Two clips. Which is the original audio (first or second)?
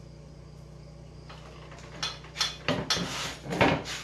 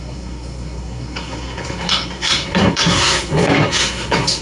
first